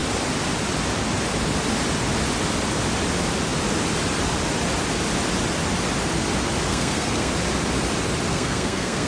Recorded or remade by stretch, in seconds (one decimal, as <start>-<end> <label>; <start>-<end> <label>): 0.0-6.7 recorded; 6.7-7.3 remade; 7.3-8.3 recorded; 8.3-9.1 remade